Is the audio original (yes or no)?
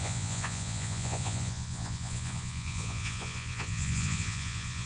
no